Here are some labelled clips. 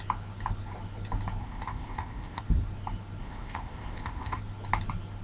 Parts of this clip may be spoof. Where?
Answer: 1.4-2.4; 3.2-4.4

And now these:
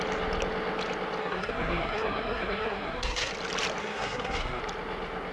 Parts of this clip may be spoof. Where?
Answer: 1.2-3.3; 3.8-4.6

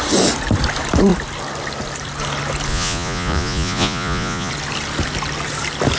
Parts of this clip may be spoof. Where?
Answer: 2.7-4.5

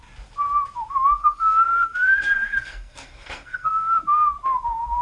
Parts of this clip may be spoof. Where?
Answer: 1.2-4.0